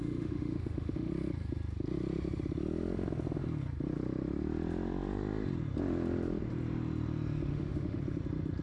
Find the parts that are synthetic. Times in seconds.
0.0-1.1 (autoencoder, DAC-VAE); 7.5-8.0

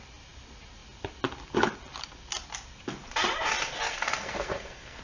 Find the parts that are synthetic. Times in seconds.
3.9-5.0 (codec, SNAC)

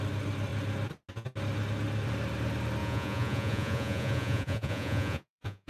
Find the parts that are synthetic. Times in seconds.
2.8-5.7 (vocoder, Vocos)

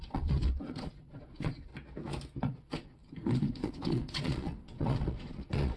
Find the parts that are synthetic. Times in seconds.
0.0-1.7 (vocoder, Vocos); 2.4-5.8

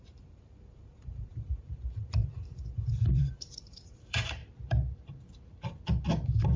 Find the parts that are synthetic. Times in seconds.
0.0-4.4 (vocoder, BigVGAN v2)

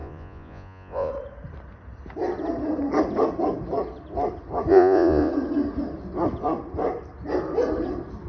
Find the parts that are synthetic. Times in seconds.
0.0-1.1 (vocoder, Vocos); 4.7-5.3

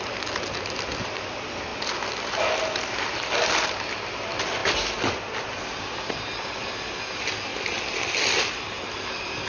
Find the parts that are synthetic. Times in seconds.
none